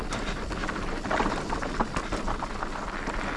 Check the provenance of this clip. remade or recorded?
recorded